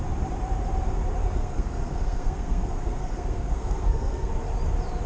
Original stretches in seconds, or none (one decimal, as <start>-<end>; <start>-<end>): 0.0-1.2; 4.3-5.1